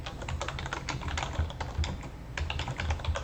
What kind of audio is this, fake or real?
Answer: real